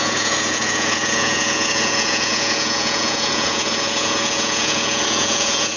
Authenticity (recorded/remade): remade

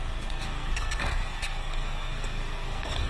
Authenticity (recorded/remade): remade